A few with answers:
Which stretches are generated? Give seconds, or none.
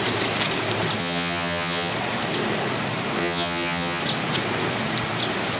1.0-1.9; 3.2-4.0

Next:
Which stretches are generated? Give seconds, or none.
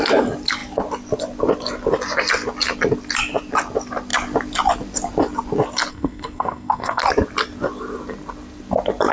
5.9-7.0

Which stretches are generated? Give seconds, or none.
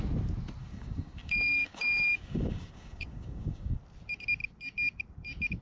0.6-3.8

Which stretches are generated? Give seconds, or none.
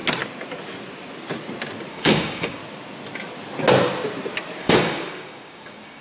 1.9-2.6; 4.6-6.0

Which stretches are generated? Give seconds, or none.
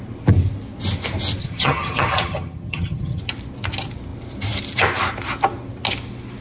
1.4-3.2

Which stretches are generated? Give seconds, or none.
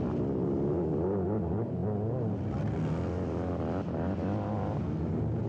none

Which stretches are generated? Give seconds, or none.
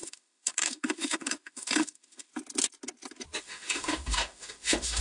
0.0-2.3; 3.4-5.0